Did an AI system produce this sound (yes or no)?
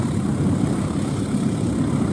yes